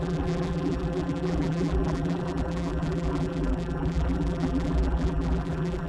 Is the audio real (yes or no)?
no